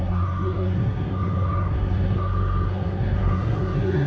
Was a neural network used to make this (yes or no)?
yes